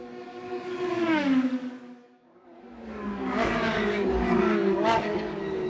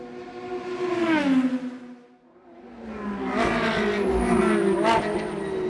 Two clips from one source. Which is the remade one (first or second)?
first